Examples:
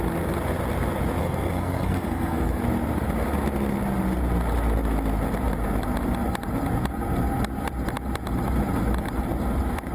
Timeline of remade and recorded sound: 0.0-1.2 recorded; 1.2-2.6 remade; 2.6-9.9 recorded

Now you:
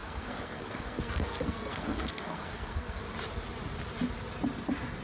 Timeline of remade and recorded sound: 0.0-3.0 remade; 3.0-5.0 recorded

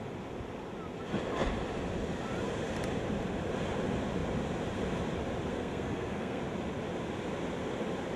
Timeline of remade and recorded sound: 0.0-5.5 recorded; 5.5-6.4 remade; 6.4-8.2 recorded

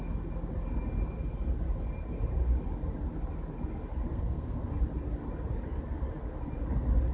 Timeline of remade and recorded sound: 0.0-4.1 recorded; 4.1-4.7 remade; 4.7-7.1 recorded